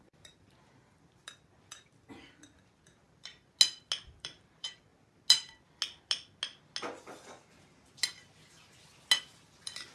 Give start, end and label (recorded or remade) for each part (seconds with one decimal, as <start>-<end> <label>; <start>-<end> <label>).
0.0-3.3 remade; 3.3-4.0 recorded; 4.0-4.9 remade; 4.9-9.2 recorded; 9.2-9.9 remade